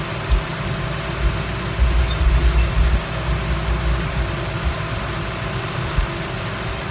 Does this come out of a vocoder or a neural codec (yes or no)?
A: no